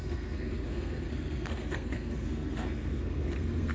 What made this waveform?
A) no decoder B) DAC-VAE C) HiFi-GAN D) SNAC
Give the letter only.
D